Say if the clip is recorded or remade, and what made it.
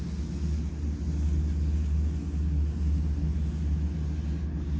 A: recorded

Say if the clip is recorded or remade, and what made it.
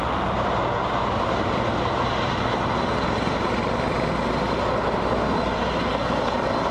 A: recorded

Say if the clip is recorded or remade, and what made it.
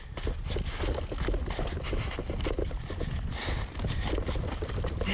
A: recorded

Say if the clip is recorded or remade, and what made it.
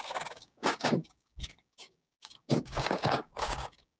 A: remade, codec, DAC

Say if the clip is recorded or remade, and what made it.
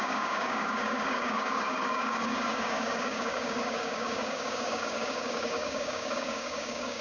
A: remade, codec, DAC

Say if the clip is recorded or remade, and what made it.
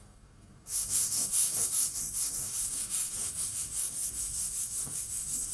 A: remade, codec, DAC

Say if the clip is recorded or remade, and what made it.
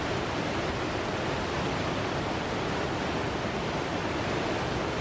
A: recorded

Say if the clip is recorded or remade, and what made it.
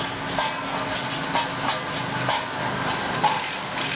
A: recorded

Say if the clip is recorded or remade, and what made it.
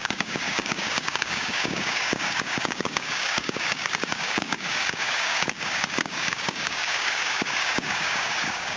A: remade, codec, DAC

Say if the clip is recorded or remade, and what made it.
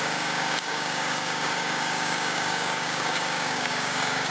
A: remade, codec, DAC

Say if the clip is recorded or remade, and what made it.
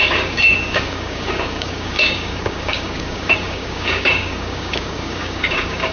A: remade, codec, DAC